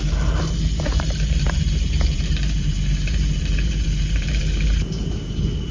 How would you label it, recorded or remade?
remade